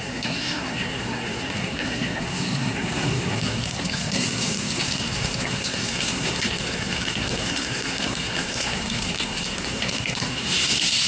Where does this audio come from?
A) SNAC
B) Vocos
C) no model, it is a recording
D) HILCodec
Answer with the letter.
A